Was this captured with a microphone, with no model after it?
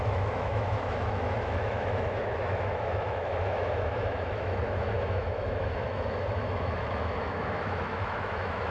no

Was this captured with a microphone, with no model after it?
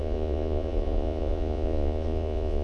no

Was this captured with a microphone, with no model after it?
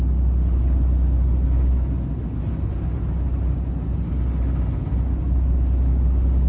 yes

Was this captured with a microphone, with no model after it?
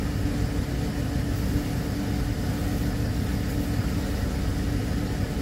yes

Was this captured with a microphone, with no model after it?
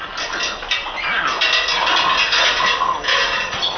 yes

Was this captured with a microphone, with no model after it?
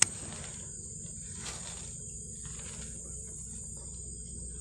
yes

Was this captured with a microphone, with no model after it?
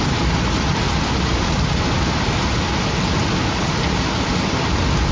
yes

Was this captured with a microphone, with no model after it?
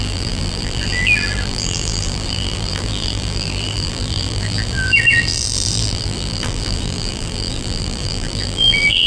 no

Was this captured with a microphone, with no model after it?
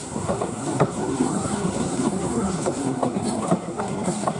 no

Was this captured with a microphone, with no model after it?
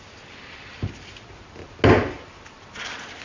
yes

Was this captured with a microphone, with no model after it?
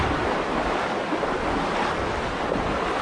no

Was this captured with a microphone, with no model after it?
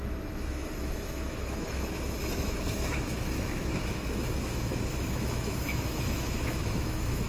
no